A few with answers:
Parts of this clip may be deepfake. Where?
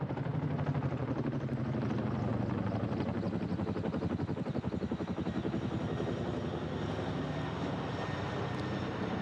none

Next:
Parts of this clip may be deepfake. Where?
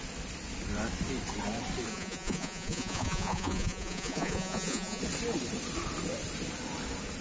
1.9-5.0 (vocoder, Vocos)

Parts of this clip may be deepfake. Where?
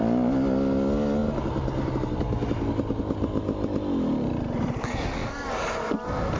none